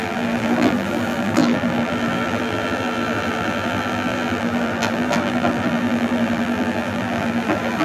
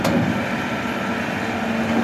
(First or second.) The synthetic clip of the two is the first